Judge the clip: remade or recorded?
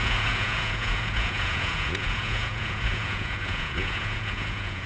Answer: remade